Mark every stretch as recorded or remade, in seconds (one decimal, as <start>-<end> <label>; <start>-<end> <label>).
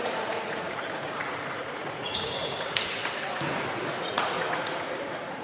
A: 0.0-5.4 remade